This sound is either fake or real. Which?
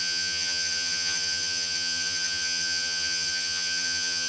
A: fake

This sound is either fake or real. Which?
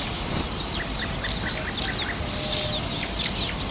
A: real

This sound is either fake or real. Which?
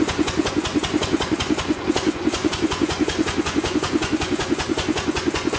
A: fake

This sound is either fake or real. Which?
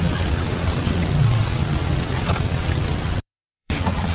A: fake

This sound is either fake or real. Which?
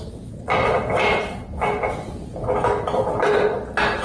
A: real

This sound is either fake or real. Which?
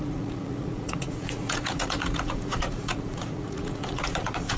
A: fake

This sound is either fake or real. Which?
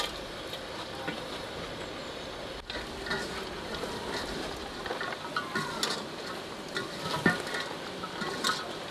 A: real